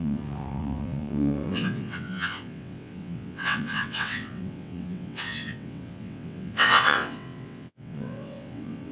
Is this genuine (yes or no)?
no